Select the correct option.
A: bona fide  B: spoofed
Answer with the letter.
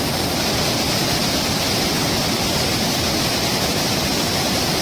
A